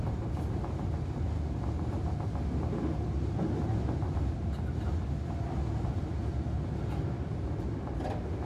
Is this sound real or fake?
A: real